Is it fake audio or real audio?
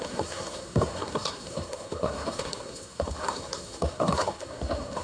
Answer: fake